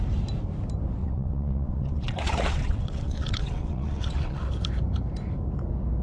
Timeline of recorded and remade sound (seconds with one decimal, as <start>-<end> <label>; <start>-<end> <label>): 0.0-1.0 recorded; 1.0-4.5 remade; 4.5-6.0 recorded